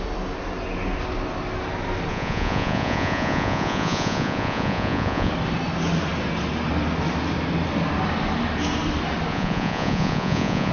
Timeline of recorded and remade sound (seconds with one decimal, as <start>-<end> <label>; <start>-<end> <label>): 0.0-2.1 recorded; 2.1-5.3 remade; 5.3-9.3 recorded; 9.3-10.7 remade